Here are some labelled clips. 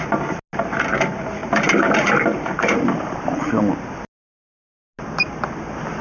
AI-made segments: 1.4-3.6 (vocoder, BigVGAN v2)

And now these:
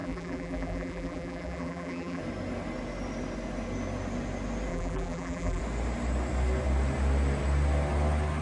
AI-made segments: 0.0-2.2 (vocoder, BigVGAN v2); 4.7-5.6

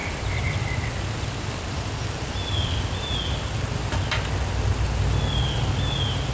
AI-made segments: 0.0-2.8 (vocoder, BigVGAN v2)

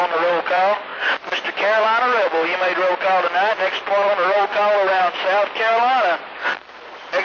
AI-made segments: 0.0-0.9 (vocoder, BigVGAN v2); 1.8-5.7; 6.3-7.2

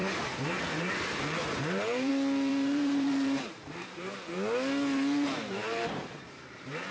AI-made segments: 0.0-2.1 (vocoder, BigVGAN v2); 2.5-4.1; 5.6-6.9

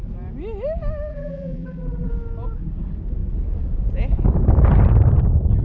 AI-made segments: 1.1-2.1 (vocoder, BigVGAN v2)

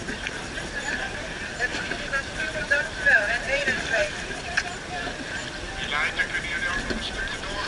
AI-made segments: 0.0-5.1 (vocoder, BigVGAN v2); 6.5-7.7